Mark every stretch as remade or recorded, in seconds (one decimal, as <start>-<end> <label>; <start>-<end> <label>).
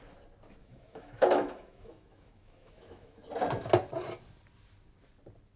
0.0-0.6 recorded; 0.6-3.2 remade; 3.2-5.6 recorded